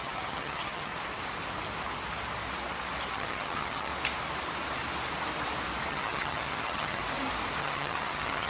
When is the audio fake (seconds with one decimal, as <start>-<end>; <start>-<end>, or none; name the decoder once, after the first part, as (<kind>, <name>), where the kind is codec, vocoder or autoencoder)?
0.0-0.9 (vocoder, HiFi-GAN); 3.1-3.9; 5.9-7.0; 7.6-8.5